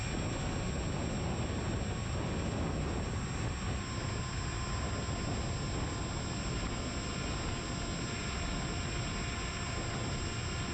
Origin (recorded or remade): recorded